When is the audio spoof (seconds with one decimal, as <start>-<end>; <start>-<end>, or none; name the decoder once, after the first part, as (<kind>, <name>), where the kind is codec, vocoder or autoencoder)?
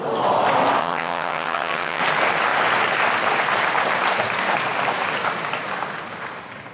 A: 0.8-2.0 (vocoder, HiFi-GAN)